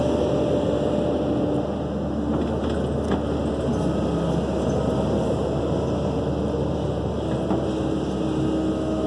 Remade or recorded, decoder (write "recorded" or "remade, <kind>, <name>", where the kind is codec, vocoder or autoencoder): recorded